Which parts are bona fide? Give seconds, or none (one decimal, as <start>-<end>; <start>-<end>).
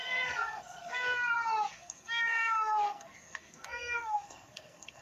1.2-1.7